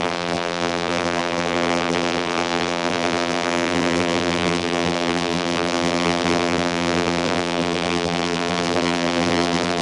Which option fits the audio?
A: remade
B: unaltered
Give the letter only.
A